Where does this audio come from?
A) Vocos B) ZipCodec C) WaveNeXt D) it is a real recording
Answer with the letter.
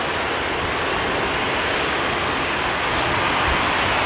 D